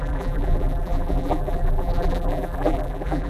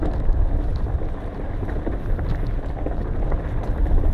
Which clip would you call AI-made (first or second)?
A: first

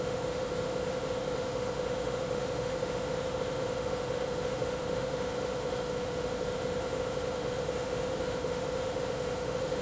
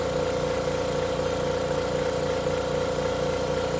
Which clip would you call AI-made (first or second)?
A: first